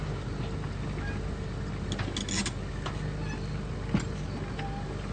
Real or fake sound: real